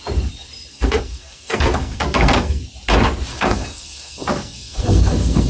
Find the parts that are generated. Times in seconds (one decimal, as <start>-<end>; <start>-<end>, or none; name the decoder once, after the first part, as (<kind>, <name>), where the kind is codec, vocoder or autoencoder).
0.7-2.6 (codec, SNAC); 3.3-5.5